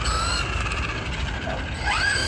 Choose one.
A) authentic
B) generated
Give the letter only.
A